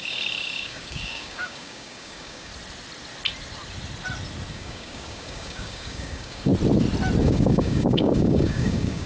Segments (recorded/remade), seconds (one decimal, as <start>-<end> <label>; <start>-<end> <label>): 0.0-2.5 remade; 2.5-4.5 recorded; 4.5-6.5 remade; 6.5-7.2 recorded; 7.2-9.1 remade